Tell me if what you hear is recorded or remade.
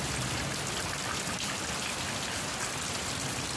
recorded